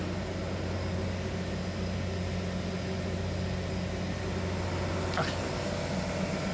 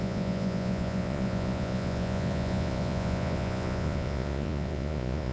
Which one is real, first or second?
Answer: first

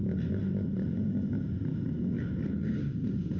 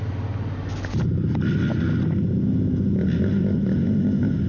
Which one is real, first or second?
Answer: second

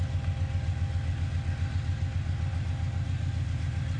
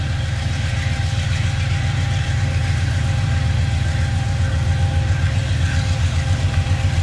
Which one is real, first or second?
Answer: first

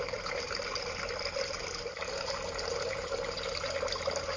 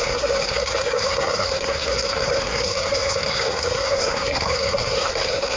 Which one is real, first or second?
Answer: first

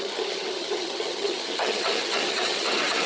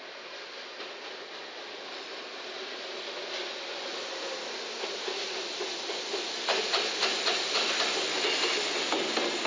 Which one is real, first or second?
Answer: second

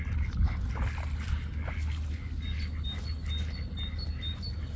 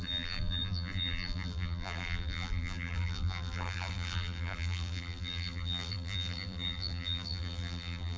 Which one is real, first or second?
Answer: first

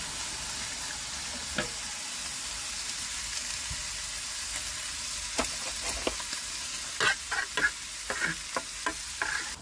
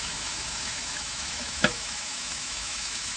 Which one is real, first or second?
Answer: first